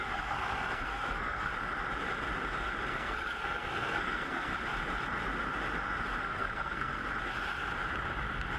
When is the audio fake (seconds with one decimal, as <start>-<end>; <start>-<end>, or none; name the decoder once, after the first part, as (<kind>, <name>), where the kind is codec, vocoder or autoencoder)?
0.0-1.5 (codec, SNAC); 2.9-4.5; 6.2-7.0